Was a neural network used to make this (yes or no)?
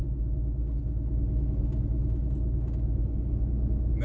no